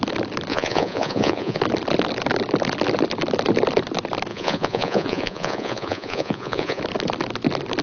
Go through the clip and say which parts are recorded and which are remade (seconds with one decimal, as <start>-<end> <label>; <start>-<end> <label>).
0.0-0.5 recorded; 0.5-1.6 remade; 1.6-4.3 recorded; 4.3-6.8 remade; 6.8-7.8 recorded